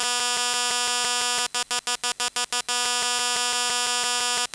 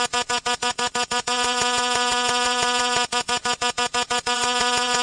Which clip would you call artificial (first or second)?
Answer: second